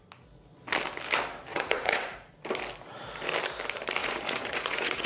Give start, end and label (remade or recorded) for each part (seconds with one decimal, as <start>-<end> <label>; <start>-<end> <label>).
0.0-1.5 recorded; 1.5-2.3 remade; 2.3-4.0 recorded; 4.0-5.1 remade